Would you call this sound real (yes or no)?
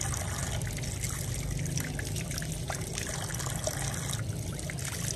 yes